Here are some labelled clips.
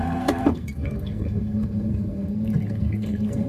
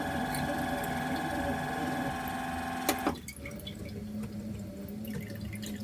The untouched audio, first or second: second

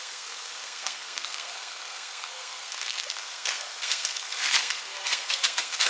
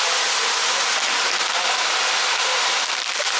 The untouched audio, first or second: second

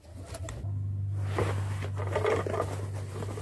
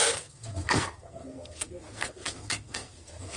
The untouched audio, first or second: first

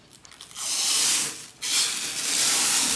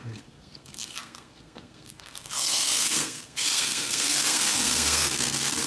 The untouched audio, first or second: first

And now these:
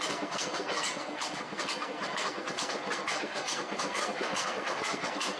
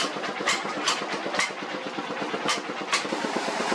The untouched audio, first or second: second